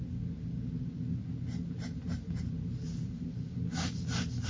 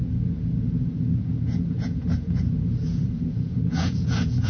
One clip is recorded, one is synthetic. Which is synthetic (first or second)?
second